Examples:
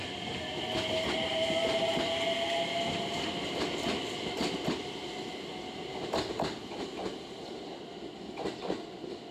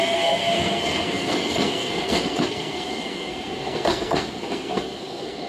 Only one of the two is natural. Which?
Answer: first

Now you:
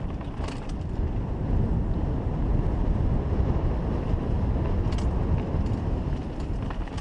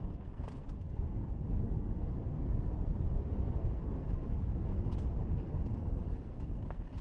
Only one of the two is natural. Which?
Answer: first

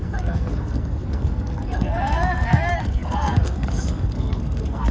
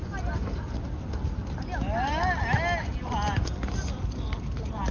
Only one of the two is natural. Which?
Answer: second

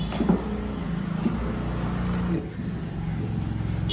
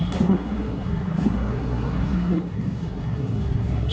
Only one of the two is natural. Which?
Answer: first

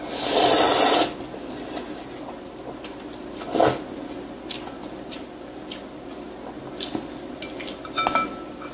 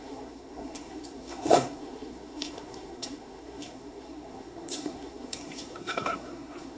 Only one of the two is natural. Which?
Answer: first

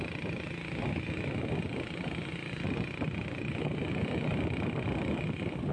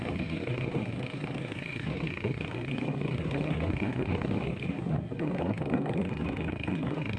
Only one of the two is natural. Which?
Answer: first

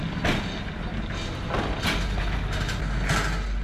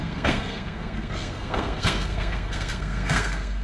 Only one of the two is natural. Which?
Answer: first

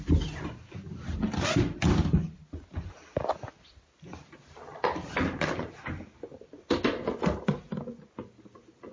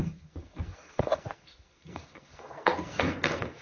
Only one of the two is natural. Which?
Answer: first